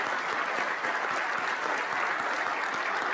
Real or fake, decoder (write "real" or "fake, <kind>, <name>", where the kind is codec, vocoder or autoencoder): real